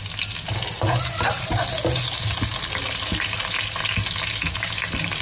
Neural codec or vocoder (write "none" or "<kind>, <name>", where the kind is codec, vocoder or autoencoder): none